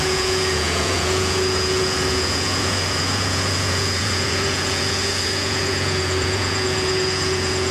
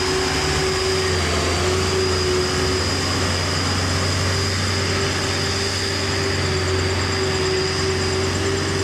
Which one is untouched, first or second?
second